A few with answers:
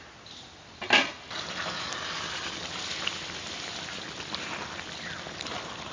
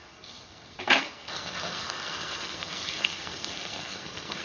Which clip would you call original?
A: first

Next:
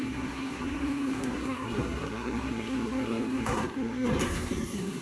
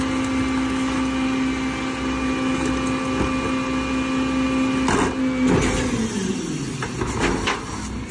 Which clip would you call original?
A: second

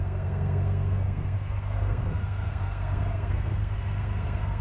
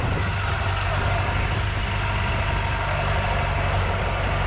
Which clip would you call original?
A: second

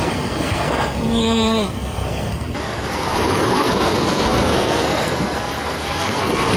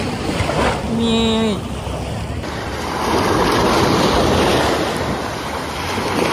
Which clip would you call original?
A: second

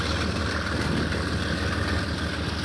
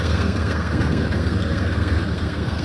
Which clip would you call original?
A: first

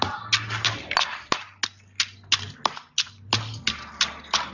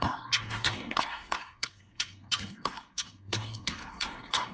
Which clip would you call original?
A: first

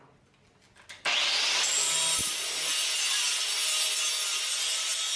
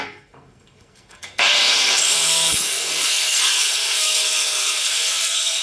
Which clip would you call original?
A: first